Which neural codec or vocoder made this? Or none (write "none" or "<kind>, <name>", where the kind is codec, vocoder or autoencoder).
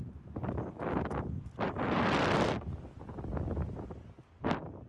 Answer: none